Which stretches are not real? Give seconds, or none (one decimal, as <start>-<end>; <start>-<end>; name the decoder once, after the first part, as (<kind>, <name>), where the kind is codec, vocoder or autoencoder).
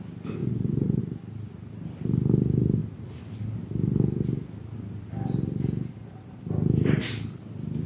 0.4-1.0 (vocoder, Vocos)